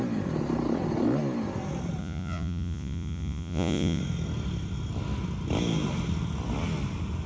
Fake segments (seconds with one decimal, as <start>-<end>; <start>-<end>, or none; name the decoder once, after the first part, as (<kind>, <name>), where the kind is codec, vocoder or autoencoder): 2.0-4.0 (vocoder, Vocos)